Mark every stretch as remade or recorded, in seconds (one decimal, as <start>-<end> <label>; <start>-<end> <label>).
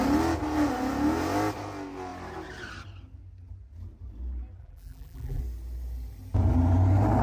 0.0-4.6 recorded; 4.6-5.4 remade; 5.4-7.2 recorded